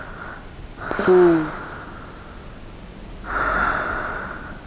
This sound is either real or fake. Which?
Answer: real